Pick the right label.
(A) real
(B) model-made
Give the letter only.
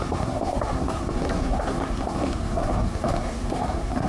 B